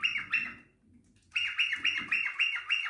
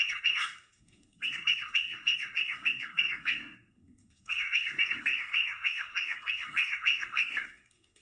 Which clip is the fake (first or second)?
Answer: second